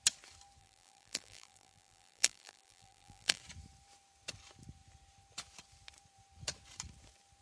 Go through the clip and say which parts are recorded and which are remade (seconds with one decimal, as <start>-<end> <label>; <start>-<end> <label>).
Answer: 0.0-0.6 recorded; 0.6-3.4 remade; 3.4-7.4 recorded